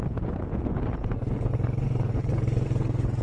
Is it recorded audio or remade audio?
remade